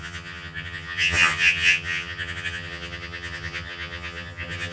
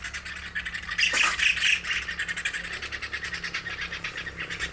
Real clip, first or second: second